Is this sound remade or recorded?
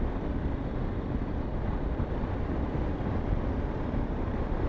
remade